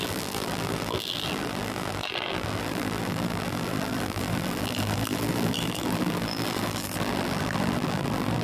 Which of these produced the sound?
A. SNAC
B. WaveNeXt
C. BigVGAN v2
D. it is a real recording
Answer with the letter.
C